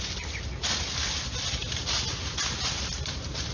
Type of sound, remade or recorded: recorded